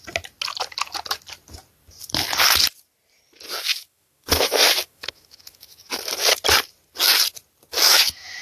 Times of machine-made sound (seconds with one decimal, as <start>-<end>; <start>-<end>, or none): 3.7-6.1; 7.7-8.4